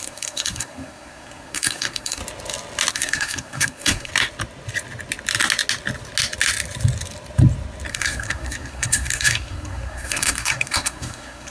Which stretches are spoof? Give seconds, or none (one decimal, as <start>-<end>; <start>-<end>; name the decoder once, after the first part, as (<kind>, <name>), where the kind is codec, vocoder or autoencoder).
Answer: 0.0-2.2 (codec, SNAC); 2.9-4.1; 7.9-11.5